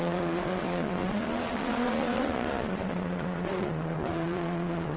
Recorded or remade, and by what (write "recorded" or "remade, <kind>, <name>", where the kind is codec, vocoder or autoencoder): remade, vocoder, Vocos